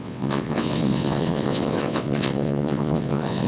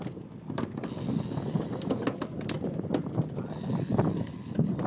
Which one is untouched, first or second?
second